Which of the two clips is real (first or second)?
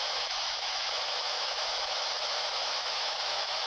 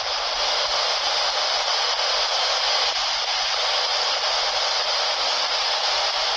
second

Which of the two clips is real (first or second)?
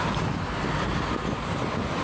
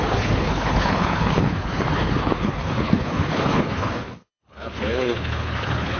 first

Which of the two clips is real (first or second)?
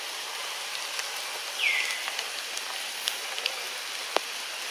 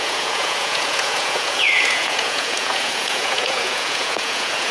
first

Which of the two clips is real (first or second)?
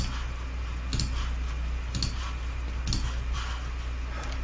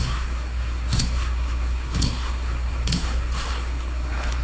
first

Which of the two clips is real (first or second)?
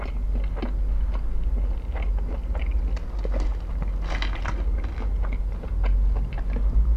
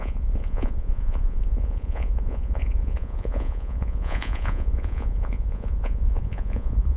first